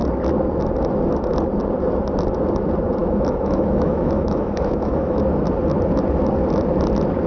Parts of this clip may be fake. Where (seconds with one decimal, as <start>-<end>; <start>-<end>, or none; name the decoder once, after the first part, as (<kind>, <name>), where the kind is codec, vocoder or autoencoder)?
3.0-5.2 (autoencoder, DAC-VAE)